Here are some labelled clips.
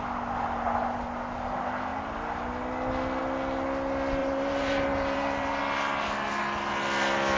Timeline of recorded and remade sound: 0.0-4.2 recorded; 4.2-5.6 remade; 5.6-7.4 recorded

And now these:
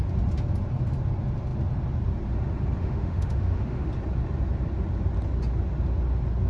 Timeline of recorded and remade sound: 0.0-2.8 recorded; 2.8-3.9 remade; 3.9-6.5 recorded

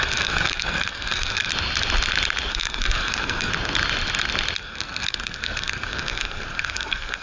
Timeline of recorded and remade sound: 0.0-1.5 remade; 1.5-2.5 recorded; 2.5-3.5 remade; 3.5-4.6 recorded; 4.6-7.2 remade

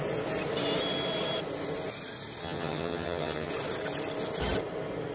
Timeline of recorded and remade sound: 0.0-2.4 recorded; 2.4-3.5 remade; 3.5-5.1 recorded

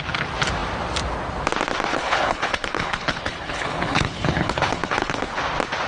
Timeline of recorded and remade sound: 0.0-1.9 recorded; 1.9-5.4 remade; 5.4-5.9 recorded

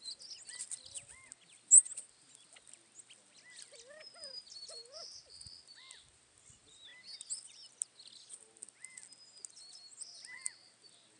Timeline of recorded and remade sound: 0.0-11.2 recorded

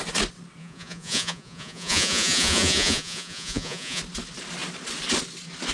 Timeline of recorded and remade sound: 0.0-0.6 recorded; 0.6-4.0 remade; 4.0-5.7 recorded

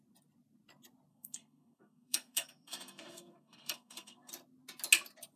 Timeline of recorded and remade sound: 0.0-1.1 recorded; 1.1-4.3 remade; 4.3-5.4 recorded